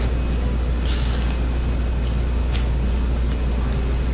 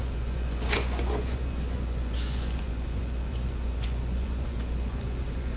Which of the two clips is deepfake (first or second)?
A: second